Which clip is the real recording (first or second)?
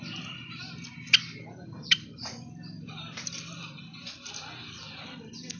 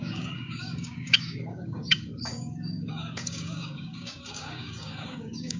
first